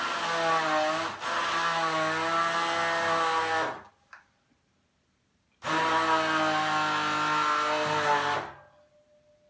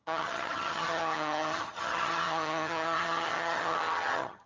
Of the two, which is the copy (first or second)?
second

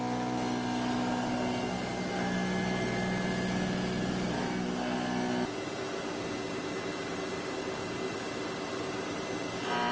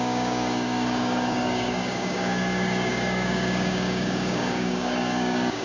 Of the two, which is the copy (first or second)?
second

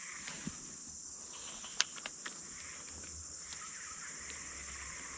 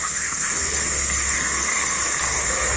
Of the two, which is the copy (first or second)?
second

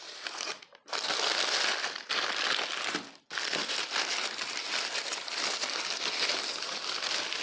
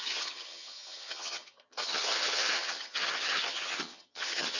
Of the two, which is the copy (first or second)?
second